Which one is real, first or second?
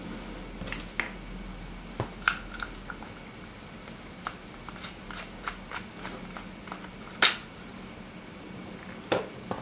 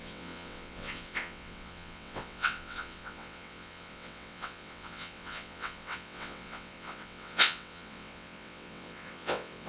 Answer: first